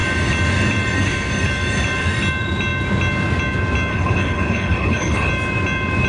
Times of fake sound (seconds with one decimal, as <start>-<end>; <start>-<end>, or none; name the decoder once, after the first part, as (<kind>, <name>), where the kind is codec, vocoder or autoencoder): 3.9-5.3 (codec, HILCodec)